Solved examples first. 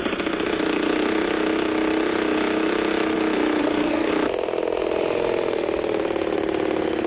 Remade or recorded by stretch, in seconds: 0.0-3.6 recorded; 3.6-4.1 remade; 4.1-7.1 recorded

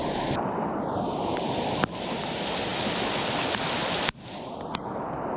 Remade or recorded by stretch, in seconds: 0.0-2.7 recorded; 2.7-3.2 remade; 3.2-5.4 recorded

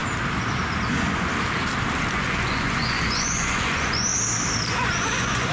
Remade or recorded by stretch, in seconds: 0.0-0.9 recorded; 0.9-1.3 remade; 1.3-2.1 recorded; 2.1-4.1 remade; 4.1-4.7 recorded; 4.7-5.5 remade